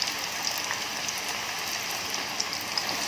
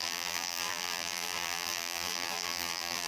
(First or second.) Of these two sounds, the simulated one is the second